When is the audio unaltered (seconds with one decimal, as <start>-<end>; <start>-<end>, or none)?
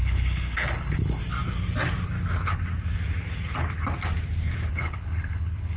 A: 1.2-4.7